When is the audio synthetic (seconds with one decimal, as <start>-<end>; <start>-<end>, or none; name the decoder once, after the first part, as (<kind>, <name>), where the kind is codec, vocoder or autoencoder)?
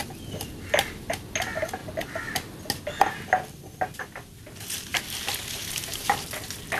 0.0-0.5 (vocoder, BigVGAN v2); 4.9-5.5